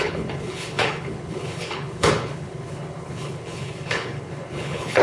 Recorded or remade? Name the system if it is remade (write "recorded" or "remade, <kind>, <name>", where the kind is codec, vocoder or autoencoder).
remade, codec, HILCodec